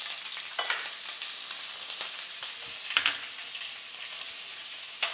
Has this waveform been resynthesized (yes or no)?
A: no